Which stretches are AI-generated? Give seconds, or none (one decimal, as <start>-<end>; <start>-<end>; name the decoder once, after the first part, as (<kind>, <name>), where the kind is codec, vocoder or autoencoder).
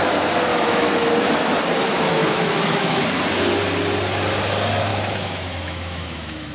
0.5-1.1 (autoencoder, DAC-VAE); 2.2-3.0; 4.9-6.5